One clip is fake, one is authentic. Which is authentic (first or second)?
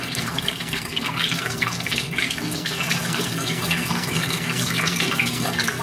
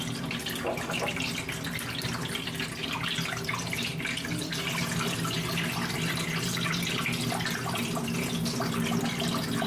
second